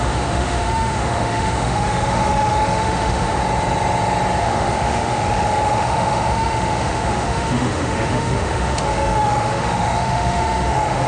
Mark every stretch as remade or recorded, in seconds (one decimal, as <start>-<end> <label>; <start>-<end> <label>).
0.0-3.4 remade; 3.4-4.4 recorded; 4.4-11.1 remade